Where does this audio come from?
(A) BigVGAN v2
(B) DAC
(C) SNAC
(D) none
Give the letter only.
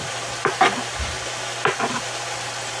D